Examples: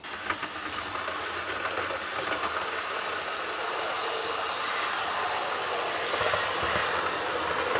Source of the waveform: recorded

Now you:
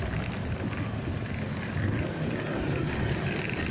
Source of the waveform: recorded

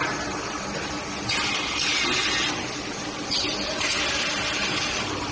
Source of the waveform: recorded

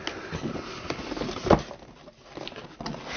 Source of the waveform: recorded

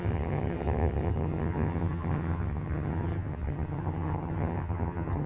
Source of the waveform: remade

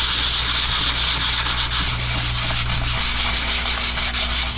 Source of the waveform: recorded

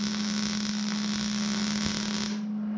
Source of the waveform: recorded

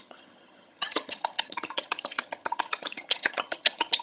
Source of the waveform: remade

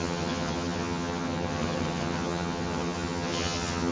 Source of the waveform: remade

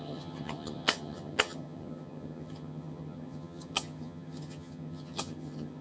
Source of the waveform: remade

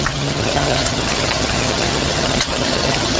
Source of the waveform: remade